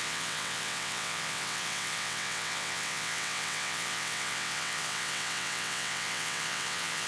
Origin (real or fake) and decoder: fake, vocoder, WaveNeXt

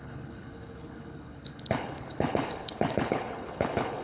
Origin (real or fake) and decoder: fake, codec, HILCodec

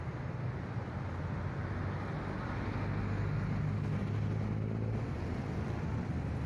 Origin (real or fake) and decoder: real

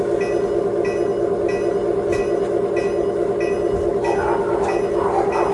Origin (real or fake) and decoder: real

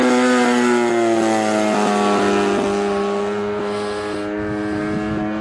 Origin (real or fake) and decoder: real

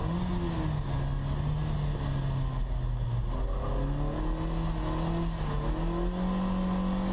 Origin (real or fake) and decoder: real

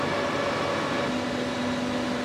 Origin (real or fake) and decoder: real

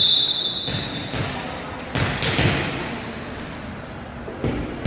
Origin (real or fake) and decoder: real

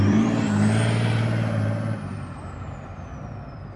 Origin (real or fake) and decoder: fake, vocoder, BigVGAN v2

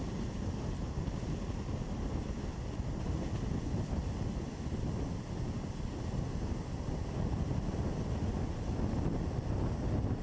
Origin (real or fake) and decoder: real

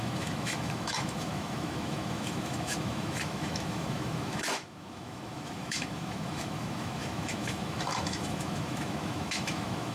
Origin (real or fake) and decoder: fake, autoencoder, DAC-VAE